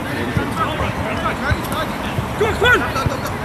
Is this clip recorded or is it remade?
remade